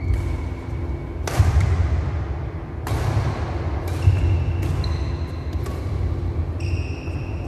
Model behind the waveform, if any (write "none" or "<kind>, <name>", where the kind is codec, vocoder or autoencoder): none